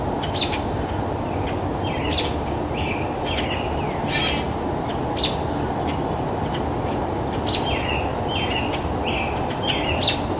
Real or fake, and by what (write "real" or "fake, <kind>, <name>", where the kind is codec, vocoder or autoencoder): real